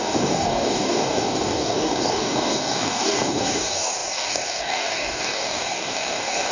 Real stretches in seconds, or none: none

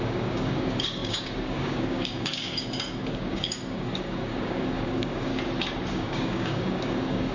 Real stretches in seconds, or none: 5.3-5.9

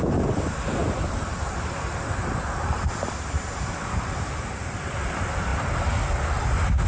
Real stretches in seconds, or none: 0.0-0.8; 4.9-6.9